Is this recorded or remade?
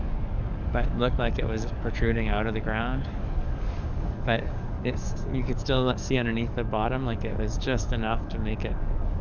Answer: remade